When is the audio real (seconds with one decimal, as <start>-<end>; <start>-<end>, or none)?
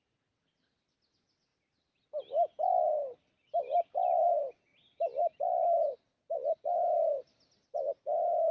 0.0-8.5